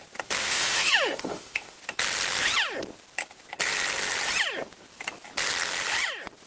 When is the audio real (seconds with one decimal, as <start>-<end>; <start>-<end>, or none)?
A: 0.0-0.4; 1.8-6.5